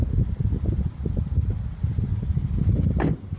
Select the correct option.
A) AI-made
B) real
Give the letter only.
B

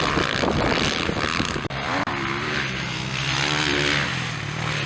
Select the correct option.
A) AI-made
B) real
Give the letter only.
B